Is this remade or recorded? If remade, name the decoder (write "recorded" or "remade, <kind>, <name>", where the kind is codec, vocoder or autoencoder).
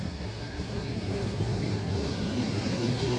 remade, codec, SNAC